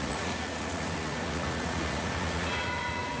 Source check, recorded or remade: remade